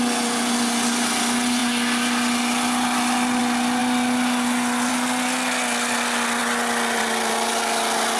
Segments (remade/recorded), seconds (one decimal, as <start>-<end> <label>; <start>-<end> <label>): 0.0-8.2 recorded